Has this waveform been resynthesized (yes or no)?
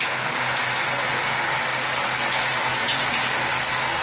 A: no